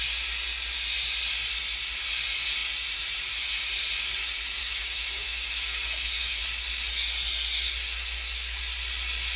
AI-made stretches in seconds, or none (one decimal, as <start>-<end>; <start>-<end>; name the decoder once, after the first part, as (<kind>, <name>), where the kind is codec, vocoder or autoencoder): 4.6-6.4 (autoencoder, DAC-VAE); 7.9-8.6